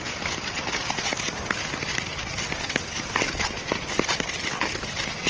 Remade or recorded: recorded